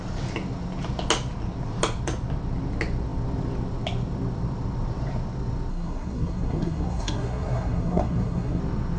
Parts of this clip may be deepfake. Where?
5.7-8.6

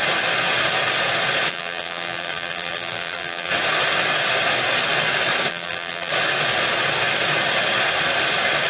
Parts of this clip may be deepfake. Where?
1.5-3.5; 5.5-6.1

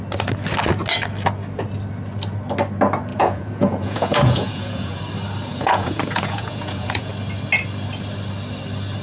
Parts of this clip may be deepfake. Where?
3.1-5.0; 5.5-7.1

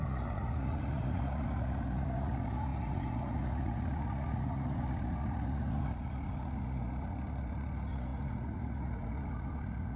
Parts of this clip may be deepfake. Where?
0.0-10.0

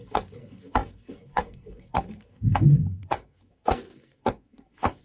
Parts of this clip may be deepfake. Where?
0.0-5.0